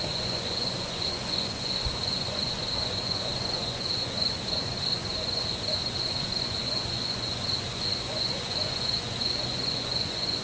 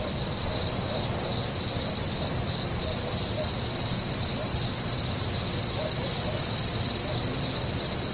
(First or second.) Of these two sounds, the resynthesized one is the first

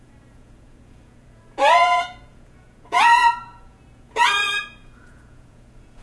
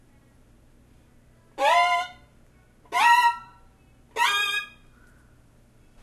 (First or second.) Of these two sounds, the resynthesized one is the first